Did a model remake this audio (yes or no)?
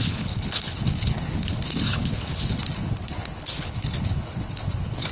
yes